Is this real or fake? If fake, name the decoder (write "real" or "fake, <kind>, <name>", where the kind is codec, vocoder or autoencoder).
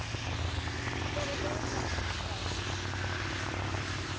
real